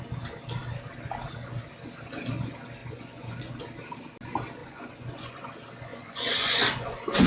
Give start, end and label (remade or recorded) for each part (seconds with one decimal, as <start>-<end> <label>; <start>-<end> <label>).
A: 0.0-2.8 recorded; 2.8-3.6 remade; 3.6-4.6 recorded; 4.6-5.4 remade; 5.4-5.9 recorded; 5.9-7.3 remade